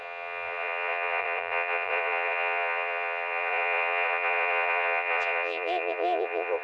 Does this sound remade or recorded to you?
remade